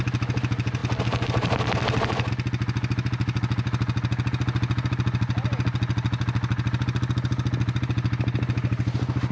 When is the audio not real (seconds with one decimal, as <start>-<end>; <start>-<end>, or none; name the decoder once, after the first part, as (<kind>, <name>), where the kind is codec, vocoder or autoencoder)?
none